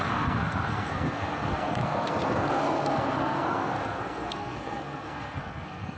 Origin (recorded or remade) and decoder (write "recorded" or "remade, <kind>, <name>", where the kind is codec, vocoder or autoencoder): remade, codec, SNAC